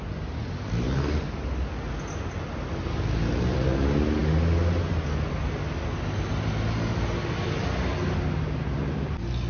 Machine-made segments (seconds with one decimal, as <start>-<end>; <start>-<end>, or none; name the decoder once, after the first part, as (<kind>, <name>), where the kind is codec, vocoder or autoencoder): none